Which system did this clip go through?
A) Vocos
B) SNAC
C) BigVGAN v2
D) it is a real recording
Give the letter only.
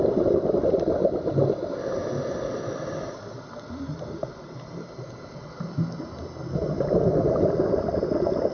D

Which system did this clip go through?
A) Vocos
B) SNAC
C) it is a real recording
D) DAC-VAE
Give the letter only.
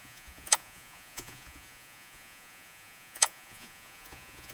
A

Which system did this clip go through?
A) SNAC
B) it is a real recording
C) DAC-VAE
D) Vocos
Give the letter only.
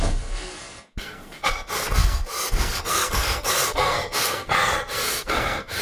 A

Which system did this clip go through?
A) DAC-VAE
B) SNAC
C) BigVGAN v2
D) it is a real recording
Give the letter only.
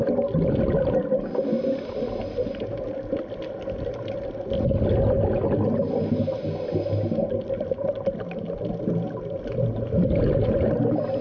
D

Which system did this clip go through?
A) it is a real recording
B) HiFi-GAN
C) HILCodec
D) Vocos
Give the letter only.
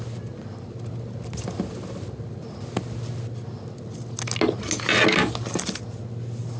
A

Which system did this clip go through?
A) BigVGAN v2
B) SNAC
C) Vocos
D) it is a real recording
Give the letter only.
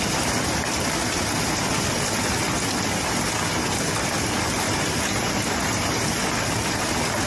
D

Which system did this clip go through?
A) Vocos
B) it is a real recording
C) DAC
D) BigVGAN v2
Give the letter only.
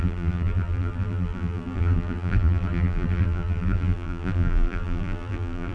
D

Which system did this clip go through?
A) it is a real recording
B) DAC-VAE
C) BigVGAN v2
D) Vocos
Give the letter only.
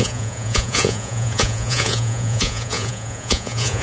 D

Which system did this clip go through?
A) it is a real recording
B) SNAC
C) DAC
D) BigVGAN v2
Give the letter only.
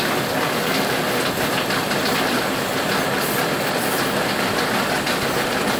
A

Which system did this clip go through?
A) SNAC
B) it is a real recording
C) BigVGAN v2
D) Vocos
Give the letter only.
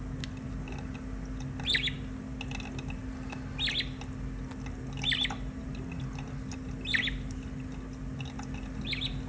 B